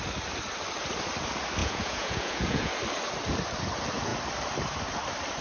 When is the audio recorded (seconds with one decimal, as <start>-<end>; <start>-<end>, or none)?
0.0-1.6; 2.7-5.4